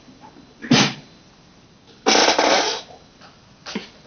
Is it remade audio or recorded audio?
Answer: recorded